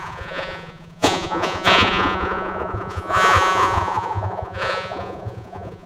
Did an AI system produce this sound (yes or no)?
yes